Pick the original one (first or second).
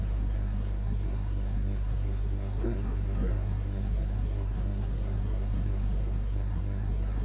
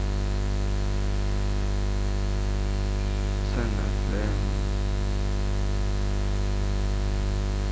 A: second